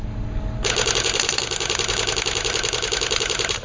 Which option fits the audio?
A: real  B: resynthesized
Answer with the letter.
A